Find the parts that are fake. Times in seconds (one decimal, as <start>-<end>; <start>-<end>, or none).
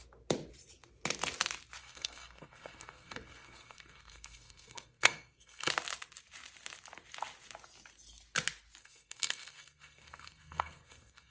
1.8-5.7; 8.8-11.3